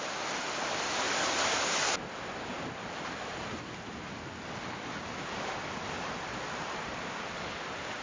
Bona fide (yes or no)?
yes